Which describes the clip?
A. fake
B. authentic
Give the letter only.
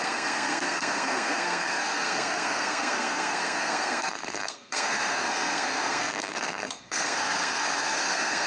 A